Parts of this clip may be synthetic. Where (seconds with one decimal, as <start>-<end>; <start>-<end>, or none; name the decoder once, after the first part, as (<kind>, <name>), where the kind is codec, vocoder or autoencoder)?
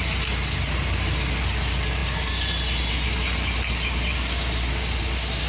none